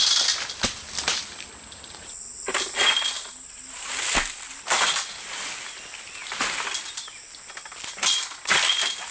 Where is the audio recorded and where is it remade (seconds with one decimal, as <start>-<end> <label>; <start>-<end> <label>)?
0.0-9.1 recorded